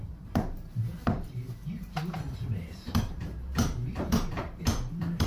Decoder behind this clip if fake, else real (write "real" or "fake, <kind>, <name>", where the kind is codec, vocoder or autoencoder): fake, vocoder, BigVGAN v2